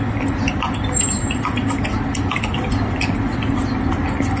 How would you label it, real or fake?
real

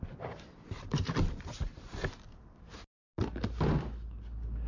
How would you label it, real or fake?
real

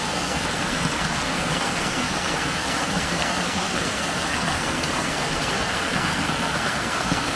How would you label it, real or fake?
fake